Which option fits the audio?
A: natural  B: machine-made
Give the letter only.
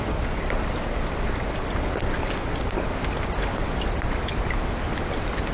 A